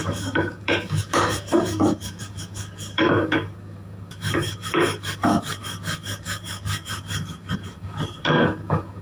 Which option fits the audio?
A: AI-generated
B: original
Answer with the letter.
A